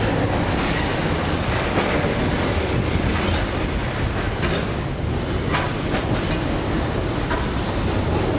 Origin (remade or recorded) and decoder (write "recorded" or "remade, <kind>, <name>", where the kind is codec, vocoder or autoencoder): recorded